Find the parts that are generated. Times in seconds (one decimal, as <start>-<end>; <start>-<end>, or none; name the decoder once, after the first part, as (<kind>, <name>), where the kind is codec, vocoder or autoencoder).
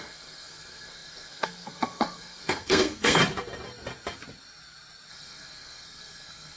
0.0-3.2 (codec, SNAC); 5.1-6.6